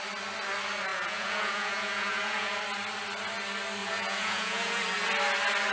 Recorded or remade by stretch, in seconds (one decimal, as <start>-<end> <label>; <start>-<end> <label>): 0.0-0.9 recorded; 0.9-2.6 remade; 2.6-3.8 recorded; 3.8-4.8 remade; 4.8-5.7 recorded